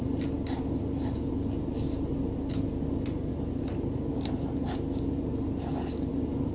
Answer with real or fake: real